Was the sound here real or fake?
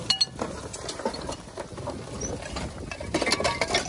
real